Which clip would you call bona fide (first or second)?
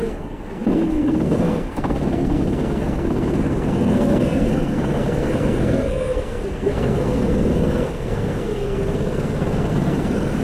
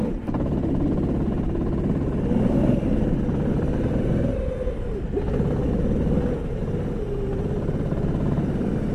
second